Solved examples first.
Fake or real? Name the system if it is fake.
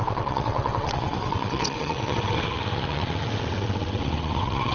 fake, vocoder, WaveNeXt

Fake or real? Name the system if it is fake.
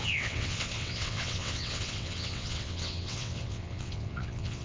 fake, vocoder, WaveNeXt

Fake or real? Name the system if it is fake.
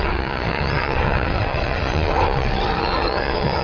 fake, vocoder, WaveNeXt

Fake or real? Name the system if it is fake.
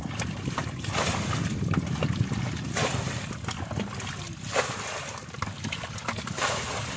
real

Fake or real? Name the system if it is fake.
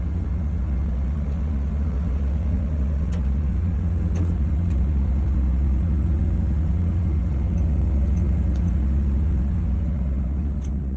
fake, vocoder, WaveNeXt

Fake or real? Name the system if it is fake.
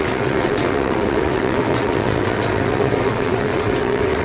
fake, vocoder, WaveNeXt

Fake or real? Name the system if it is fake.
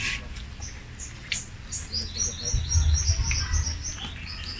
real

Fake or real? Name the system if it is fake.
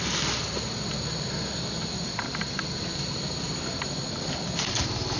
real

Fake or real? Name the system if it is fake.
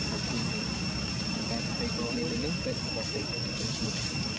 real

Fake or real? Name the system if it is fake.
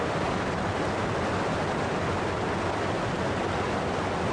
real